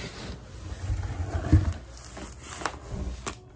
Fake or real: real